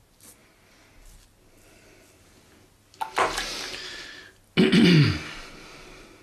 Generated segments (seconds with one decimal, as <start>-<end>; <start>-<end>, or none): none